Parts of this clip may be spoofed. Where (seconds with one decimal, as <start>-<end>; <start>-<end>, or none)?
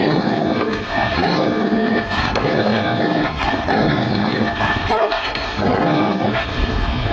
0.0-7.1